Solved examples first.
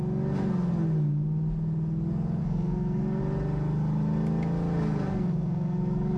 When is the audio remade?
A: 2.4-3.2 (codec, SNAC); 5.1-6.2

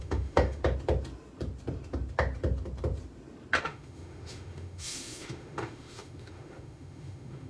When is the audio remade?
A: 0.0-0.6 (autoencoder, DAC-VAE); 3.6-7.5

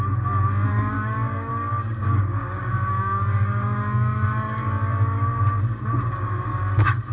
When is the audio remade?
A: 0.7-1.5 (codec, DAC); 2.0-4.8; 6.1-7.1

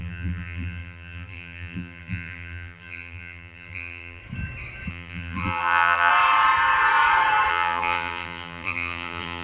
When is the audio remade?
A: 0.0-4.2 (vocoder, BigVGAN v2); 4.9-6.1; 7.5-9.4